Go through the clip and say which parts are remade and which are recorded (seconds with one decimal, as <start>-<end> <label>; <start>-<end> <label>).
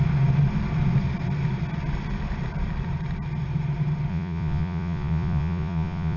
0.0-4.1 recorded; 4.1-6.2 remade